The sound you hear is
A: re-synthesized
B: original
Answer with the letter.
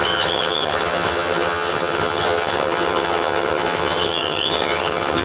A